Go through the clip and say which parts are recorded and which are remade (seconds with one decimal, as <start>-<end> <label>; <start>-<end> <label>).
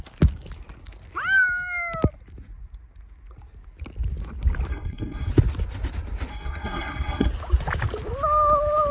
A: 0.0-4.7 recorded; 4.7-5.3 remade; 5.3-6.3 recorded; 6.3-7.3 remade; 7.3-8.9 recorded